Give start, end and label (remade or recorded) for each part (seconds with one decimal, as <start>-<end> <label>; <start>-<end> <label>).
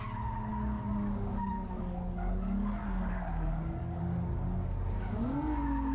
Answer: 0.0-0.5 recorded; 0.5-4.0 remade; 4.0-5.9 recorded